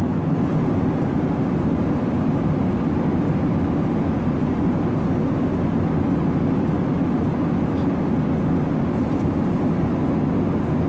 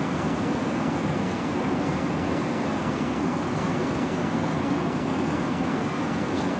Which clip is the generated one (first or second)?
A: second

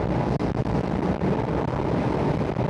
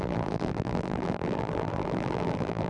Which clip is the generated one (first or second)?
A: second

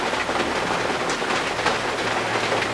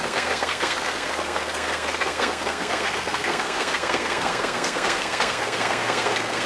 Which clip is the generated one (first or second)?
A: second